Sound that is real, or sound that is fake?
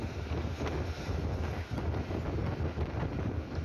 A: real